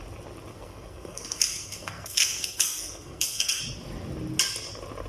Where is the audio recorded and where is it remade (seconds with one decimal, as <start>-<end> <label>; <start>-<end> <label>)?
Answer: 0.0-0.5 recorded; 0.5-3.6 remade; 3.6-5.1 recorded